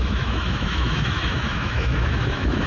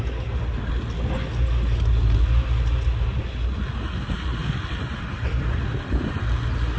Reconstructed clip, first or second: first